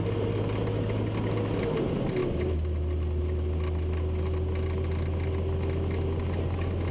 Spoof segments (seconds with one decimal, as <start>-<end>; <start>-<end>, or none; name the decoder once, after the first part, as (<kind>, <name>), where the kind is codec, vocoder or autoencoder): none